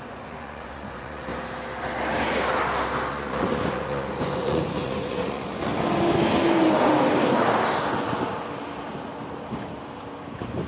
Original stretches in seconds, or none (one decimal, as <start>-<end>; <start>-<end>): 1.3-3.1; 5.7-10.7

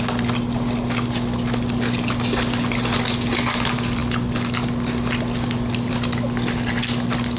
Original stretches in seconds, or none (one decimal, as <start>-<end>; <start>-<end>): 0.0-7.4

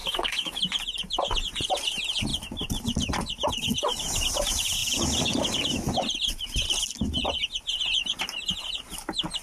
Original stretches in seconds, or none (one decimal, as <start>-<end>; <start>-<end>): 0.6-9.4